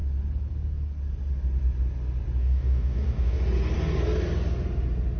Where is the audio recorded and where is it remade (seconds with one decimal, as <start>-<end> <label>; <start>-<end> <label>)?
0.0-2.4 recorded; 2.4-3.4 remade; 3.4-5.2 recorded